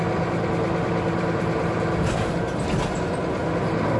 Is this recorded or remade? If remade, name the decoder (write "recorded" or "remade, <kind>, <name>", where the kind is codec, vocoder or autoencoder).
recorded